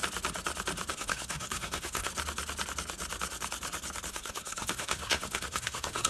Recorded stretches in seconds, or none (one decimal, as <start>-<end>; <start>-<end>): 0.0-0.9; 2.1-4.1